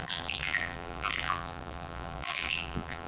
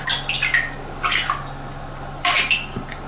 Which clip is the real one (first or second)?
second